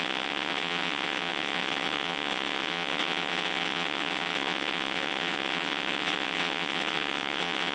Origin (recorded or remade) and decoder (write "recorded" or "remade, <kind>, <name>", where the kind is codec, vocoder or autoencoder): remade, vocoder, WaveNeXt